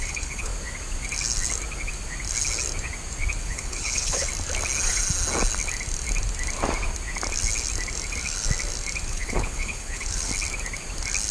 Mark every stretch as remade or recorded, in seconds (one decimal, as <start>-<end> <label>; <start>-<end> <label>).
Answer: 0.0-0.5 remade; 0.5-3.4 recorded; 3.4-4.3 remade; 4.3-9.1 recorded; 9.1-10.3 remade; 10.3-11.3 recorded